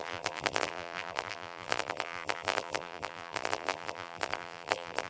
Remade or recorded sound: remade